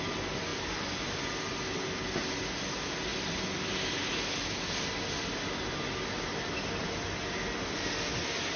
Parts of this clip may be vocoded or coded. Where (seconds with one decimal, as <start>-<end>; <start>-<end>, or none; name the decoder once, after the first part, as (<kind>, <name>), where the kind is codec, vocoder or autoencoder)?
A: none

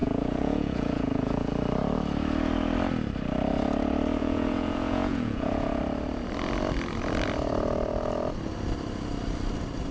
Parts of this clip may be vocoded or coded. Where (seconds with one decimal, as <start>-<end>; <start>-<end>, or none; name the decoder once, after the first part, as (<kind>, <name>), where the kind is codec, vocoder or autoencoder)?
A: 0.0-1.5 (vocoder, Vocos); 4.2-5.8

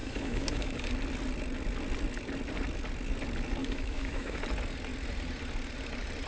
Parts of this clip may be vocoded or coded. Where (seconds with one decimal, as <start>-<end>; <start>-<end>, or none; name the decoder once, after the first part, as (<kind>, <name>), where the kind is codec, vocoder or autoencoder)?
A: 0.0-0.9 (autoencoder, DAC-VAE); 3.6-4.4

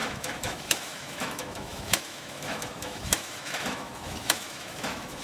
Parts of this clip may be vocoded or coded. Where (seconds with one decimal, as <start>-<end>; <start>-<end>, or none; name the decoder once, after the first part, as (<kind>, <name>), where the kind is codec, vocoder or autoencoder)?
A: 0.0-5.2 (autoencoder, DAC-VAE)

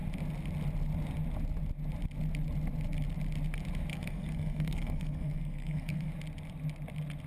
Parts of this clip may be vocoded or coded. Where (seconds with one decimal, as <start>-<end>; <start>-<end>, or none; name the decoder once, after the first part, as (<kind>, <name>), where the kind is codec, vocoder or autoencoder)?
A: 3.9-6.1 (codec, SNAC)